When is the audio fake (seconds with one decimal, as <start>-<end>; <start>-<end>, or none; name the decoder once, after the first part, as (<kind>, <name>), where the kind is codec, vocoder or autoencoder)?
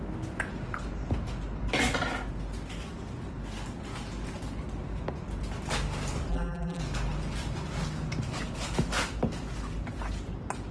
6.3-6.8 (vocoder, BigVGAN v2)